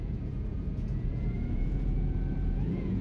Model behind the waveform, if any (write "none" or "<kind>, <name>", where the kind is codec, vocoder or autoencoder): vocoder, Vocos